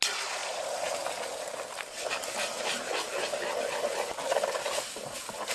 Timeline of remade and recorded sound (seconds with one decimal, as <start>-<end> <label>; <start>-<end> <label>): 0.0-5.5 recorded

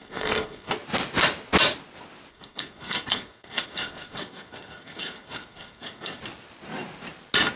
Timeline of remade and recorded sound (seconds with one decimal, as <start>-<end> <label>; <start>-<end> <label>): 0.0-0.7 remade; 0.7-2.3 recorded; 2.3-6.2 remade; 6.2-7.6 recorded

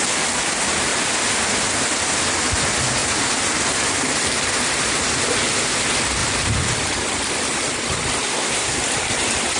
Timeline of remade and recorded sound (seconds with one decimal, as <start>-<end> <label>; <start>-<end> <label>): 0.0-8.3 recorded; 8.3-8.8 remade; 8.8-9.6 recorded

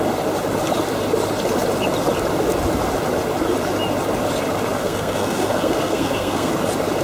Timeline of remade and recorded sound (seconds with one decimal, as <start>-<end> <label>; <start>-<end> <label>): 0.0-4.8 recorded; 4.8-6.5 remade; 6.5-7.0 recorded

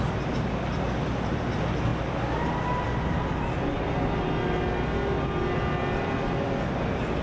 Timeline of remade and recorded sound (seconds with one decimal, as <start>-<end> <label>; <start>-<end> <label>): 0.0-7.2 recorded

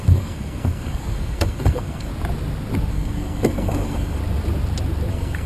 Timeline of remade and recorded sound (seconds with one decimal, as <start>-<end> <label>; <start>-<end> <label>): 0.0-2.1 remade; 2.1-2.9 recorded; 2.9-4.2 remade; 4.2-5.1 recorded; 5.1-5.5 remade